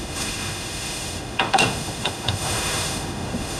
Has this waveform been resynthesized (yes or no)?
yes